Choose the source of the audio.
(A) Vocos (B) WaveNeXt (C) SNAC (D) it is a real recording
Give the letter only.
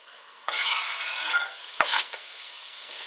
C